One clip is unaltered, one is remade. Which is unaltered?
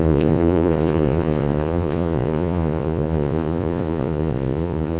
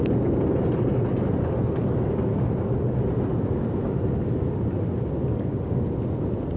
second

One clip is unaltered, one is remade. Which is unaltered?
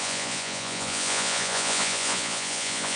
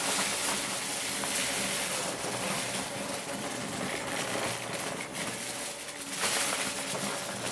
second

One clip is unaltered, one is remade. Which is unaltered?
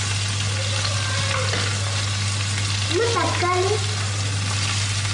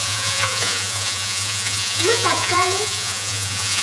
first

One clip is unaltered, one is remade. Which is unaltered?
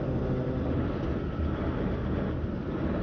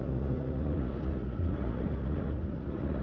first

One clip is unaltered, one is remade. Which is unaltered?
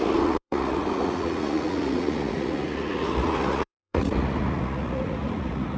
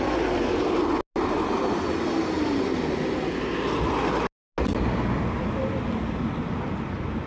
second